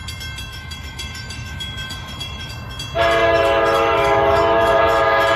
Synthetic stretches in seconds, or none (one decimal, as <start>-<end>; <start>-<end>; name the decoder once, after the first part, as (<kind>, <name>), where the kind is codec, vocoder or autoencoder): 0.5-2.5 (autoencoder, DAC-VAE); 3.2-4.8